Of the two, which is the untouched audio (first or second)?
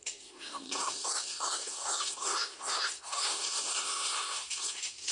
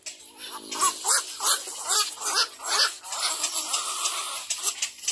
second